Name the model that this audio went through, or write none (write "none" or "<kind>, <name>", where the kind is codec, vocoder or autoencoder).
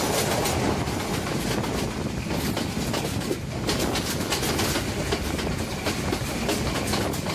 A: none